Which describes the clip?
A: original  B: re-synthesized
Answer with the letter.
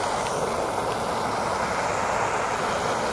A